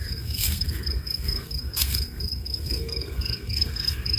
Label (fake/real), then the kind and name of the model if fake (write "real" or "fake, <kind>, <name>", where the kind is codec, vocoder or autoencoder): fake, codec, SNAC